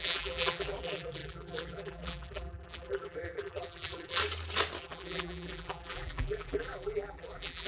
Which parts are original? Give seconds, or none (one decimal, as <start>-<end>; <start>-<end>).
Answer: 4.2-4.8